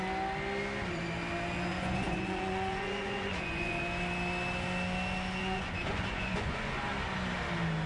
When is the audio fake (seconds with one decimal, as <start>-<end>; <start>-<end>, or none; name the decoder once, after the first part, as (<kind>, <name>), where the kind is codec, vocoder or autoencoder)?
1.7-3.8 (vocoder, Vocos); 5.4-6.9